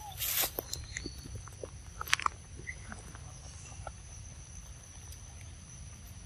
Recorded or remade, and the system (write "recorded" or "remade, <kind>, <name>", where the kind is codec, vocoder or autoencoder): recorded